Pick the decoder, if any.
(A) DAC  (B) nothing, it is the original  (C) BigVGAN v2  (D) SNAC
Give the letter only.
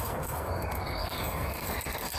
D